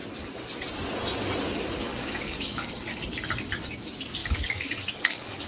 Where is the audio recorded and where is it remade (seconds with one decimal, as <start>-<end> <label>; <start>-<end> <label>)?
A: 0.0-1.9 recorded; 1.9-2.9 remade; 2.9-4.2 recorded; 4.2-5.5 remade